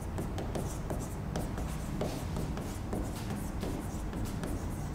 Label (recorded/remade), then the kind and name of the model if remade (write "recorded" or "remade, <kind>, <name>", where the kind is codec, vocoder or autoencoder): recorded